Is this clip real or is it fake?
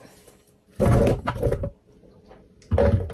real